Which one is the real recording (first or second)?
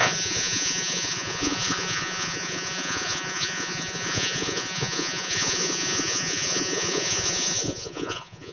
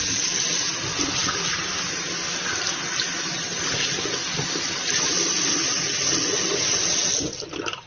second